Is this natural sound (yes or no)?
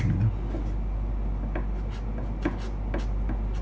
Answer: yes